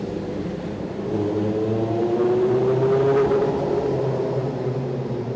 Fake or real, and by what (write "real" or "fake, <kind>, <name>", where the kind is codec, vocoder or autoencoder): real